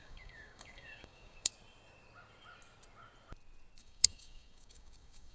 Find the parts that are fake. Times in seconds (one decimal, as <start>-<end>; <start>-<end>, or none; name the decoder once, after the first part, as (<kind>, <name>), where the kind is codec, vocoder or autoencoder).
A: 0.0-1.5 (codec, DAC); 3.8-5.3